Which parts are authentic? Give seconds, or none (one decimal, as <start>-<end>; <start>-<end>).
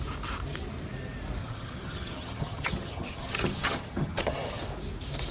0.0-1.4; 4.6-5.3